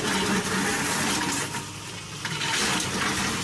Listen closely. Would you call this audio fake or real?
real